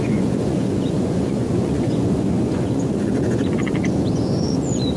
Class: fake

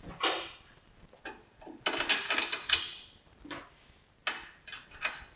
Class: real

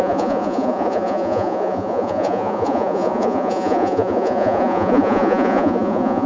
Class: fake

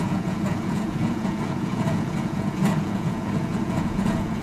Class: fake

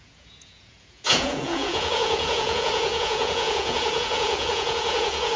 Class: fake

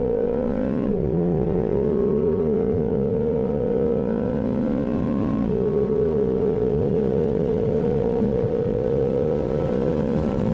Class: fake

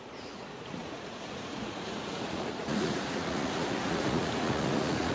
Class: fake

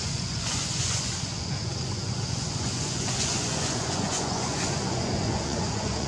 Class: fake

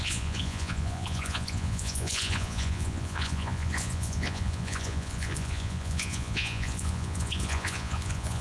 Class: fake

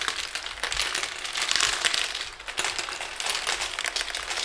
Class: real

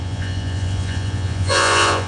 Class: fake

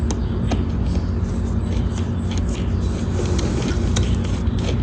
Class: real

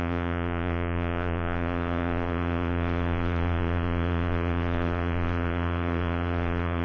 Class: fake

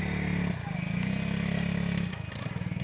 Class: real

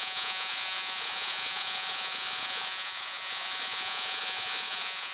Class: fake